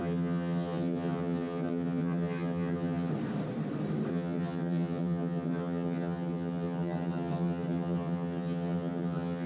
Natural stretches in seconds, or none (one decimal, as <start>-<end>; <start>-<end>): 3.1-4.1